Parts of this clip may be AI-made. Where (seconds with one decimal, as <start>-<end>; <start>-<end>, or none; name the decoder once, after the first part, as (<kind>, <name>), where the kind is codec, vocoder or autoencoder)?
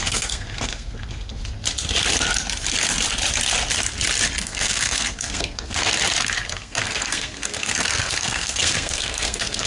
0.0-1.4 (codec, SNAC); 4.4-5.9; 6.5-9.7